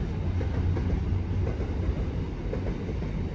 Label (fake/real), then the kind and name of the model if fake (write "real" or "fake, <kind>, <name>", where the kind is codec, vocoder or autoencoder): real